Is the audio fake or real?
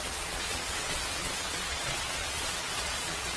fake